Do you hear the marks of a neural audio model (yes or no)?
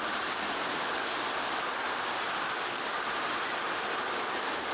no